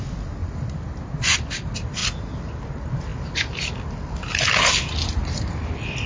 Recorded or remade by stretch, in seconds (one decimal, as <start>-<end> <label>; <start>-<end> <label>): 0.0-0.4 recorded; 0.4-1.5 remade; 1.5-6.1 recorded